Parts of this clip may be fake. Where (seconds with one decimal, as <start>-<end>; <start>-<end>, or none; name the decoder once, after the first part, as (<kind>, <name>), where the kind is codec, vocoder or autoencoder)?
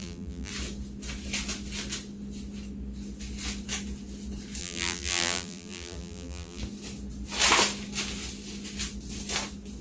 0.0-0.5 (vocoder, BigVGAN v2); 4.6-6.6